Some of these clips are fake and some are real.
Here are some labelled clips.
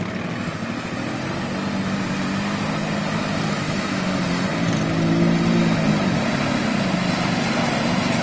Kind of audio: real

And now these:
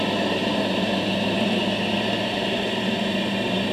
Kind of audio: fake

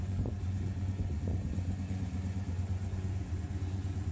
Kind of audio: fake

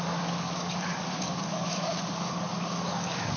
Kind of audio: fake